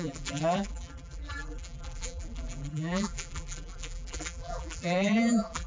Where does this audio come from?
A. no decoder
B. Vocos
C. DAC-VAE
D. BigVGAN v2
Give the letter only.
D